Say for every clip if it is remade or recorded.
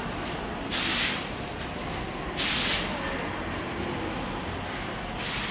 recorded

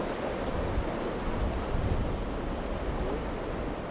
recorded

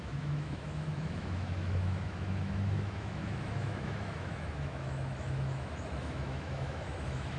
remade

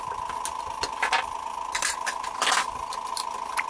recorded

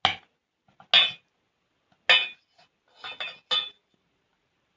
recorded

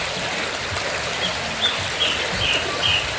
recorded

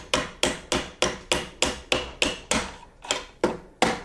recorded